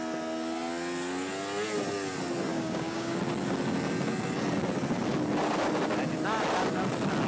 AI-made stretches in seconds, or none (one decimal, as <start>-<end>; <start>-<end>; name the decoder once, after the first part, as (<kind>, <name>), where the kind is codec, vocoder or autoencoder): 2.5-3.2 (codec, DAC)